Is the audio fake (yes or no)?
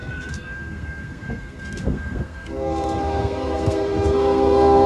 yes